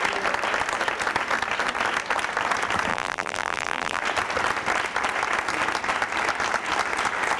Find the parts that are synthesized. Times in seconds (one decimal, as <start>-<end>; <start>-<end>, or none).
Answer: 2.9-4.0